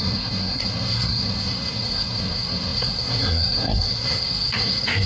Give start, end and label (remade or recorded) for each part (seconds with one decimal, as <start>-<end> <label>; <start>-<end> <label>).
0.0-5.1 remade